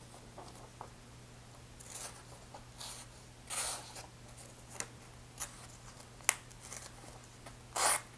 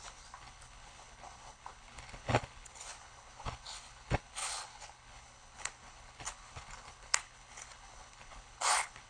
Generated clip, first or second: second